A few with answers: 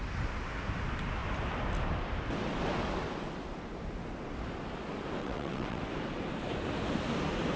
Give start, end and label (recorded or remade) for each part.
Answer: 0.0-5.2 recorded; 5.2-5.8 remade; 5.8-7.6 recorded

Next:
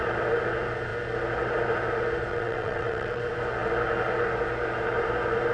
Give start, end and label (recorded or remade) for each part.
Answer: 0.0-2.3 recorded; 2.3-3.2 remade; 3.2-5.5 recorded

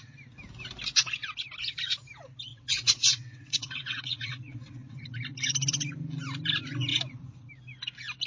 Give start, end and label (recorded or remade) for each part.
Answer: 0.0-2.5 recorded; 2.5-5.0 remade; 5.0-6.9 recorded; 6.9-7.5 remade; 7.5-8.3 recorded

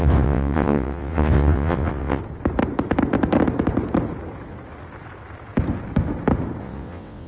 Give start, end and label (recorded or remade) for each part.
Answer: 0.0-2.2 remade; 2.2-6.6 recorded; 6.6-7.3 remade

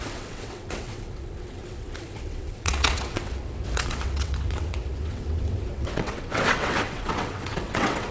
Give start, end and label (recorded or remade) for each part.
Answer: 0.0-8.1 remade

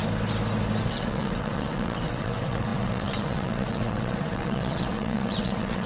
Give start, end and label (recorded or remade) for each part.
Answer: 0.0-0.8 recorded; 0.8-5.9 remade

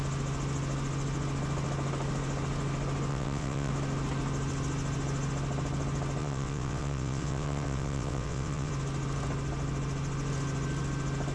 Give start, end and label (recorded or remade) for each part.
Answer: 0.0-3.1 recorded; 3.1-3.7 remade; 3.7-6.2 recorded; 6.2-8.7 remade; 8.7-11.3 recorded

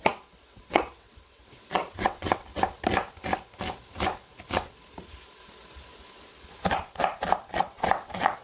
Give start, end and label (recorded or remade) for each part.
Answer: 0.0-2.5 remade; 2.5-7.5 recorded; 7.5-8.4 remade